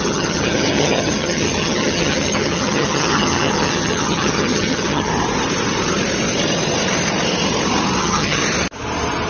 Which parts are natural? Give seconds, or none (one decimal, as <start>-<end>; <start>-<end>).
5.1-8.0; 8.4-9.3